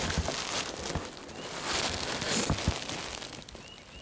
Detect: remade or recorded recorded